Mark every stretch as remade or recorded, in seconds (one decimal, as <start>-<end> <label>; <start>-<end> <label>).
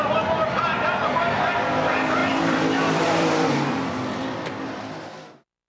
0.0-2.2 recorded; 2.2-4.8 remade; 4.8-5.7 recorded